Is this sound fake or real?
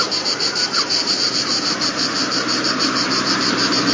fake